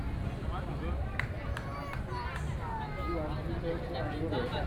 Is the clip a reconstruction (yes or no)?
no